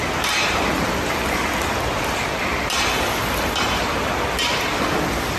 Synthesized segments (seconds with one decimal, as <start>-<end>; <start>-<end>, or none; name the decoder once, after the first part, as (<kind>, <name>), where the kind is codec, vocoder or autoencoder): none